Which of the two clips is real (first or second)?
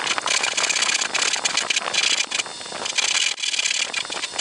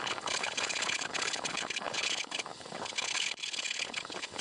first